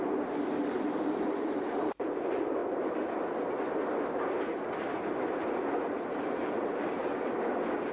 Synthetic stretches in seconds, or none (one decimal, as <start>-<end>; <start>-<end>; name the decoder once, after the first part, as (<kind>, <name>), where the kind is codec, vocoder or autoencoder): 0.0-2.6 (vocoder, BigVGAN v2); 5.7-7.0